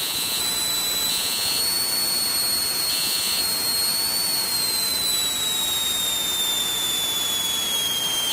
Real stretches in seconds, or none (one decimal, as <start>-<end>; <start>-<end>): 0.4-1.1; 1.6-2.9; 3.4-8.3